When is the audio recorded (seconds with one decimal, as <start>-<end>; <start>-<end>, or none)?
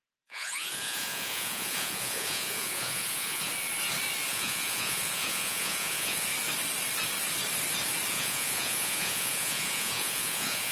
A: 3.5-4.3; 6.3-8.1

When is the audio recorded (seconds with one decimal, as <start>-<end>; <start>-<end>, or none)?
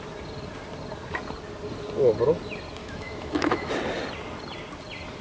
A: 0.0-2.8; 3.7-5.2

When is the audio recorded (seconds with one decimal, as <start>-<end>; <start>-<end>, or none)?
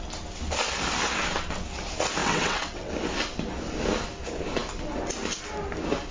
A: 0.0-2.2; 2.9-6.1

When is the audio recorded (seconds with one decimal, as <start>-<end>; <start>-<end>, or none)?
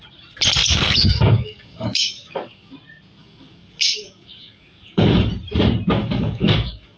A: 0.0-0.6; 2.7-3.2; 5.3-6.0